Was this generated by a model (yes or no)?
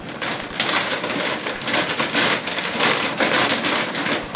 yes